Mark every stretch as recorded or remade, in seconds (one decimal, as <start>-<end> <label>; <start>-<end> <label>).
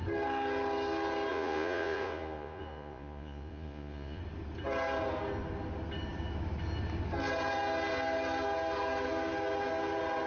0.0-1.3 recorded; 1.3-4.2 remade; 4.2-10.3 recorded